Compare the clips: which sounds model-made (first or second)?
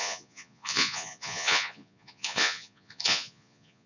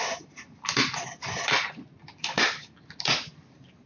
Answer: first